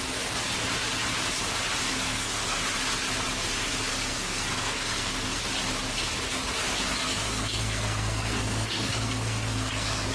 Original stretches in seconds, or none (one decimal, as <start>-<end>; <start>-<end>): 0.0-1.9; 2.6-3.9; 5.4-7.0